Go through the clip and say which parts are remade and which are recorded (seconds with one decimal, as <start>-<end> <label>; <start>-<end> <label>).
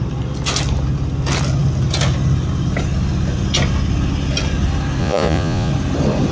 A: 0.0-5.0 recorded; 5.0-5.7 remade; 5.7-6.3 recorded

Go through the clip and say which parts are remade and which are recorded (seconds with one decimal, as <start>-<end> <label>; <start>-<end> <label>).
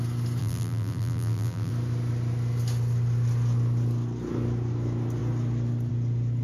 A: 0.0-0.4 recorded; 0.4-1.7 remade; 1.7-6.4 recorded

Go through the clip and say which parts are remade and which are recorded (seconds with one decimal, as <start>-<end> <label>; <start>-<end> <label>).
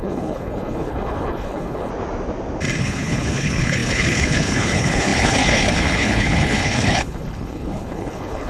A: 0.0-1.9 remade; 1.9-2.8 recorded; 2.8-8.5 remade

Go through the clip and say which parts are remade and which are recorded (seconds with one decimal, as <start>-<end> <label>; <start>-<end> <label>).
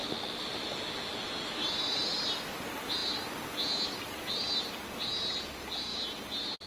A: 0.0-6.7 recorded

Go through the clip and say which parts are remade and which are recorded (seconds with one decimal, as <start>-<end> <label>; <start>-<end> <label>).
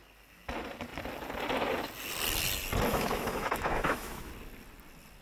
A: 0.0-2.9 recorded; 2.9-4.3 remade; 4.3-5.2 recorded